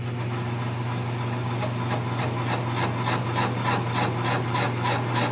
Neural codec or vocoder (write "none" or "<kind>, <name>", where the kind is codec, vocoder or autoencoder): none